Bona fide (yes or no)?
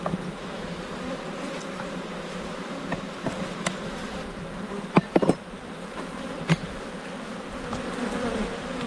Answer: no